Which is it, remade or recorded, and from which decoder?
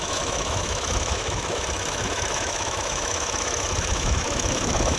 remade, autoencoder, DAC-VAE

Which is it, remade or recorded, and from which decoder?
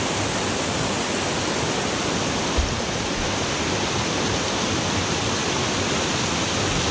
recorded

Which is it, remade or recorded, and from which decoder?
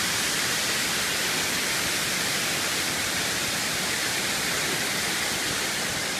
recorded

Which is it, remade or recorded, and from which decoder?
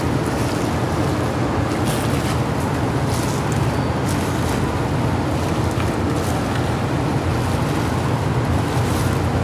recorded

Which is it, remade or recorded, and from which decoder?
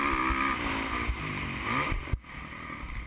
recorded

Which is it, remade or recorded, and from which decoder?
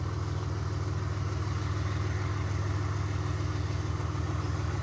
recorded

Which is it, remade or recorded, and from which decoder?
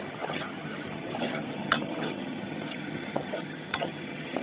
remade, vocoder, HiFi-GAN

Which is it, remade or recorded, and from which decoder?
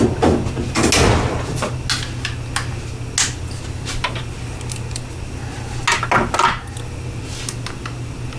recorded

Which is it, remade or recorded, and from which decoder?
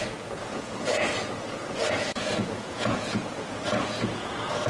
remade, vocoder, Vocos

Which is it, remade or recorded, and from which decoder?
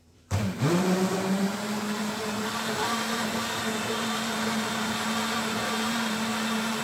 remade, vocoder, BigVGAN v2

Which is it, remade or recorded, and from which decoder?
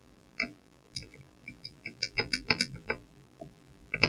remade, vocoder, BigVGAN v2